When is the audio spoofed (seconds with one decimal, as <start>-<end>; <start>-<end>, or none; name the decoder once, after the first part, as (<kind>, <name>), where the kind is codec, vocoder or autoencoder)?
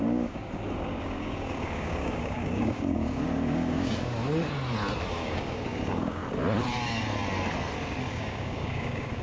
0.0-4.2 (codec, DAC); 5.1-6.2; 8.1-9.2